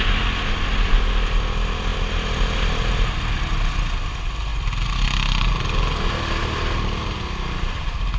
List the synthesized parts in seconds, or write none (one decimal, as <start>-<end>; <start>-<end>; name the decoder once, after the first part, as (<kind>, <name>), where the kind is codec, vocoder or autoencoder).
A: none